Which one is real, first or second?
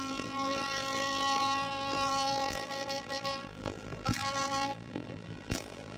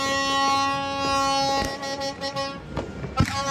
second